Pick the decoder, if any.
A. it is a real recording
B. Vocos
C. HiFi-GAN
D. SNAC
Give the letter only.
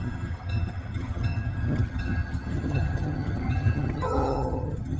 C